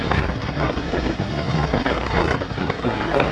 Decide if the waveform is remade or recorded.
remade